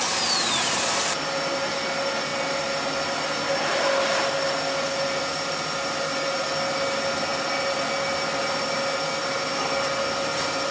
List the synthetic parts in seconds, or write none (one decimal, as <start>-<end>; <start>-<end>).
none